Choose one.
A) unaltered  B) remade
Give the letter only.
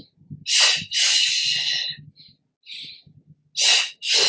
A